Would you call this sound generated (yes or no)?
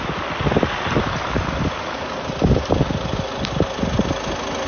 no